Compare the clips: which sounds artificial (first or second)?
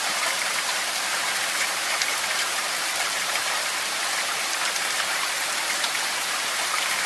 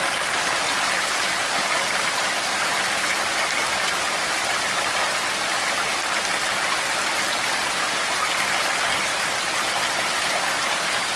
first